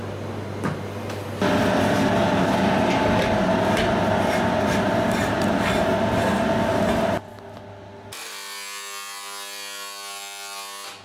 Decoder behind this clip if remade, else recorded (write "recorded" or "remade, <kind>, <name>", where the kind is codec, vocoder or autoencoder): recorded